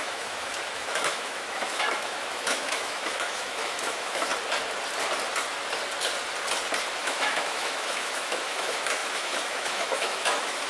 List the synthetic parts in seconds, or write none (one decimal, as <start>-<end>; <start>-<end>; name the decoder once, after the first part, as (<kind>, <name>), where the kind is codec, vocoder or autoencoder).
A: 0.0-4.3 (autoencoder, DAC-VAE); 7.0-10.7